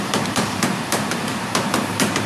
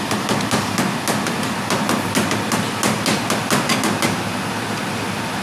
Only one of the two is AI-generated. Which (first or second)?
first